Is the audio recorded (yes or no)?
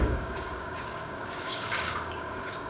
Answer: no